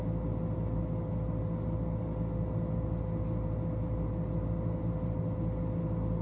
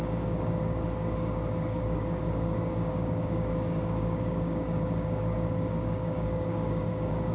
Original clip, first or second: first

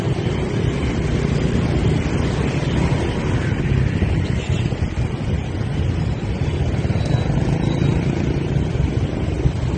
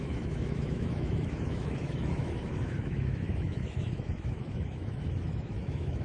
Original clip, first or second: first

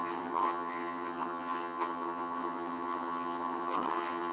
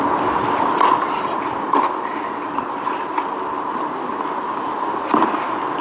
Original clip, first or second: second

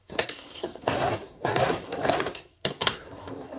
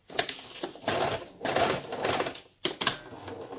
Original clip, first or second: second